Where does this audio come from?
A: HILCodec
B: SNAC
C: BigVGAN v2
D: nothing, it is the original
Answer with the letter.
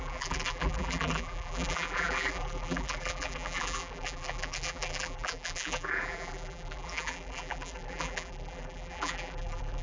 C